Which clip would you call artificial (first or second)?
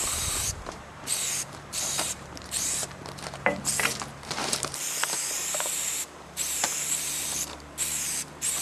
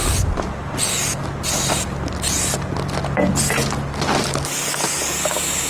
first